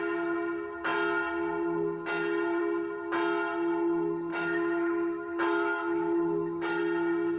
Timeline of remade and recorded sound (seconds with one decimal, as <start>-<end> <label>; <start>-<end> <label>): 0.0-4.3 recorded; 4.3-6.8 remade; 6.8-7.4 recorded